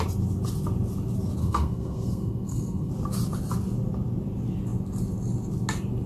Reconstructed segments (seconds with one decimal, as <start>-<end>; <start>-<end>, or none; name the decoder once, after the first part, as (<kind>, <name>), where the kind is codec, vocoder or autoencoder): 1.4-2.9 (codec, SNAC)

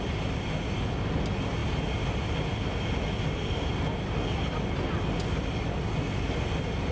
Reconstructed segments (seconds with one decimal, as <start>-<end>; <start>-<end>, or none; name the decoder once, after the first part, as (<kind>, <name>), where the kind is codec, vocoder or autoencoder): none

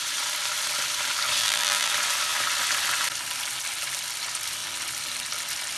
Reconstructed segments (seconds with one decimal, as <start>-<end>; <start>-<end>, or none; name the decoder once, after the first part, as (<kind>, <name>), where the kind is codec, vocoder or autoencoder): 1.4-1.9 (vocoder, BigVGAN v2)

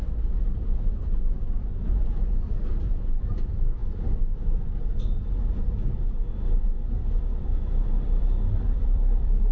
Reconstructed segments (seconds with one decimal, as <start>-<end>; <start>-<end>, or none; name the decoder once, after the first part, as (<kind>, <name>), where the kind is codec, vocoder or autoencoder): 0.0-1.7 (vocoder, BigVGAN v2); 2.8-3.8; 7.2-9.5

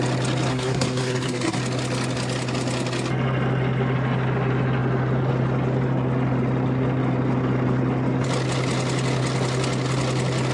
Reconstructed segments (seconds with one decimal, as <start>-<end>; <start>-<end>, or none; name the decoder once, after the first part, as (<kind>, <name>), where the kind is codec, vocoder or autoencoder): 0.5-1.6 (codec, SNAC)

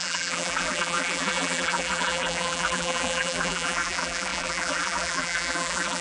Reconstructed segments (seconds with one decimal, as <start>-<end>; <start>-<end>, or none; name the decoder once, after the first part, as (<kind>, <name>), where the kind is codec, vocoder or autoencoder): 0.0-6.0 (vocoder, BigVGAN v2)